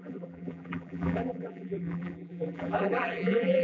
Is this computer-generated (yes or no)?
yes